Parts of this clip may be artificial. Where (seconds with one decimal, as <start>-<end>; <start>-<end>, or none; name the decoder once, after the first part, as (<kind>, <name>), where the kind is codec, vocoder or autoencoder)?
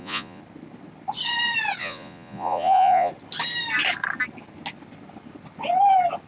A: 0.0-0.4 (vocoder, Vocos); 1.8-3.1